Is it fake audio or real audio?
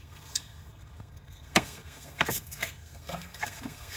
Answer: fake